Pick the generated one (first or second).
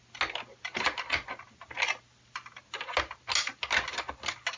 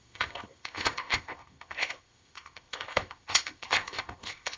second